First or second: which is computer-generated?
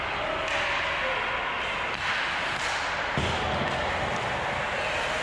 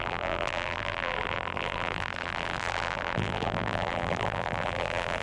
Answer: second